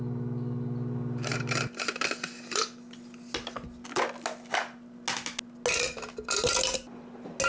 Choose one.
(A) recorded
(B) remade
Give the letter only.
A